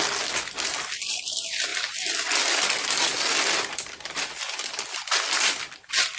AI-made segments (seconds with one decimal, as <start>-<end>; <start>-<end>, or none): none